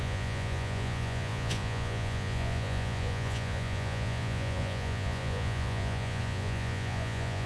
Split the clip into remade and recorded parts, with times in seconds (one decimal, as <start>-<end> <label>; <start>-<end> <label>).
0.0-7.5 remade